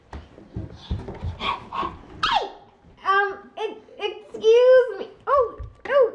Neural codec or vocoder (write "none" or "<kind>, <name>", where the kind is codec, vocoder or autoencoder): none